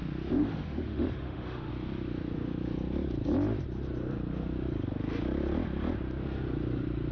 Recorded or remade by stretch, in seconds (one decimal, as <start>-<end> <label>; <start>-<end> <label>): 0.0-0.4 recorded; 0.4-1.7 remade; 1.7-7.1 recorded